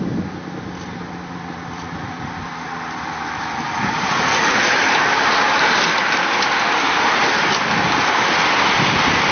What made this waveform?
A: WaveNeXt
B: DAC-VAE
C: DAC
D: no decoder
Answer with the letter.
D